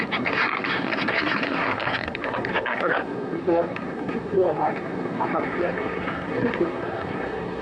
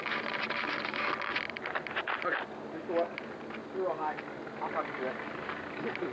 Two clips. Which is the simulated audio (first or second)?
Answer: first